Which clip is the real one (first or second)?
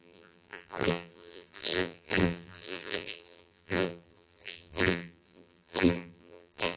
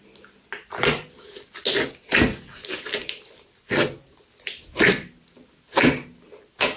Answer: second